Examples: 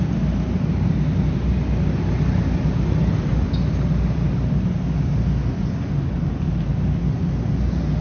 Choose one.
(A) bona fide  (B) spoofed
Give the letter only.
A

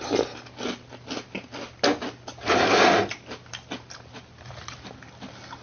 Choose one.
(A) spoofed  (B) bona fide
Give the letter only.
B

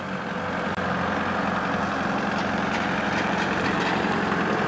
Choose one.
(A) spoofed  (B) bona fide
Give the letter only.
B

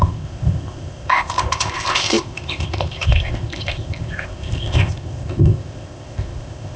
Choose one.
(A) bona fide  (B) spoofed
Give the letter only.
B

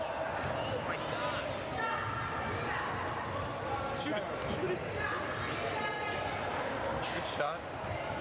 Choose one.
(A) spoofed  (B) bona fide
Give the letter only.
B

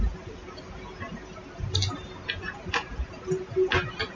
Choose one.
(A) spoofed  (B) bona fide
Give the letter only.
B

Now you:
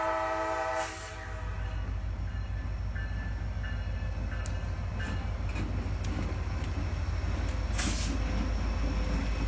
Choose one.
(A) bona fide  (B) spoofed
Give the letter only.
A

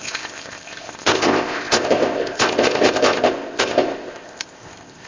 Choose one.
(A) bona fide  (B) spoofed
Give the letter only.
B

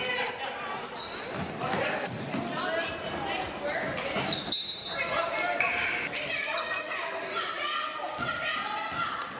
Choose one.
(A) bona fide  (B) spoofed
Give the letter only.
A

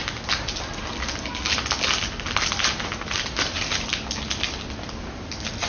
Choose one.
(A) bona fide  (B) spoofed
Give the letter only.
A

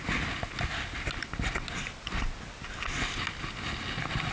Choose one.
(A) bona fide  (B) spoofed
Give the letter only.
A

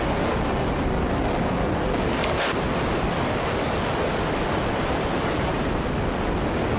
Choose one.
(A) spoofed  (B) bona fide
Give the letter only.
B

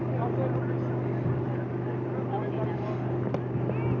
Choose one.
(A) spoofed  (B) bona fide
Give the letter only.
B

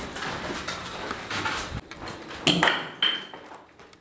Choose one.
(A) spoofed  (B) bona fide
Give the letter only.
B